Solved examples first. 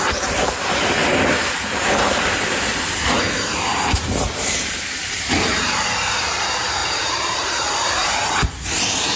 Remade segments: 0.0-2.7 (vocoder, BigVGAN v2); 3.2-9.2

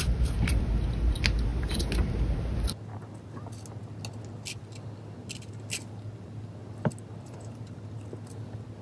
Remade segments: none

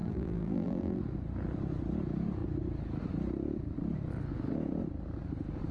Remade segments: 0.0-1.0 (vocoder, BigVGAN v2)

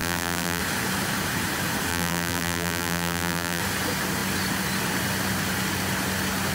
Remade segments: 0.0-0.6 (vocoder, BigVGAN v2); 1.9-3.6